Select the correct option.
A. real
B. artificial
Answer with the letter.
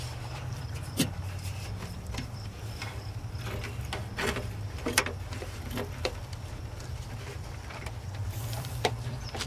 B